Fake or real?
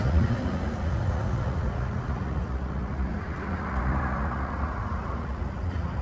fake